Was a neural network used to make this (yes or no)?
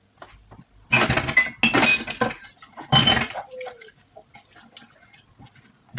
no